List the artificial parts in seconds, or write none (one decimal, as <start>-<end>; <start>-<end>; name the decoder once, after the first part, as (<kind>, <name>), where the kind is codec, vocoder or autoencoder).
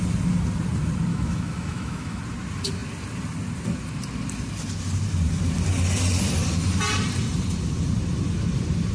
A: 1.1-2.2 (autoencoder, DAC-VAE)